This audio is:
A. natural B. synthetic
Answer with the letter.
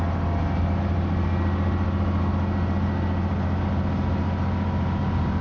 A